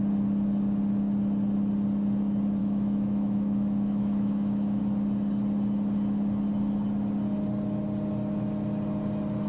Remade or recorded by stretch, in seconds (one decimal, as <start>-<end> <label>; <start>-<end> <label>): 0.0-2.6 recorded; 2.6-4.8 remade; 4.8-9.5 recorded